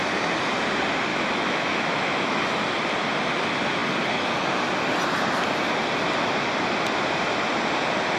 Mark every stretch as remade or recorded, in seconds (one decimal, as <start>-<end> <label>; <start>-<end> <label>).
0.0-1.1 recorded; 1.1-2.4 remade; 2.4-8.2 recorded